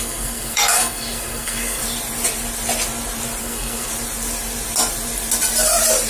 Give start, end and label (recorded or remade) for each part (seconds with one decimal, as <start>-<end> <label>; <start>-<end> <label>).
0.0-1.8 remade; 1.8-3.4 recorded; 3.4-3.9 remade; 3.9-6.1 recorded